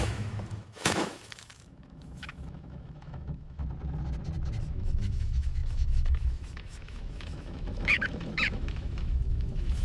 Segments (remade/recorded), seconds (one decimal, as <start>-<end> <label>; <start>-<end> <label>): 0.0-3.6 remade; 3.6-4.7 recorded; 4.7-9.8 remade